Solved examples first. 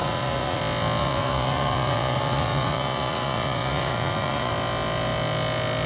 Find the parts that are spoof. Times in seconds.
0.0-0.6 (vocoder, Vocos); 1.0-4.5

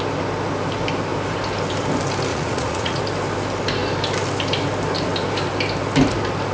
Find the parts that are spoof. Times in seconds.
2.3-3.0 (vocoder, Vocos)

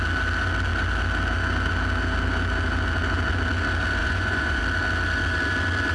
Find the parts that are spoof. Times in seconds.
4.0-4.6 (vocoder, Vocos)

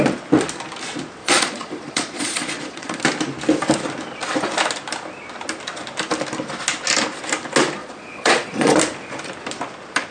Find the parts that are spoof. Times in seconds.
1.2-3.0 (vocoder, Vocos); 7.8-8.8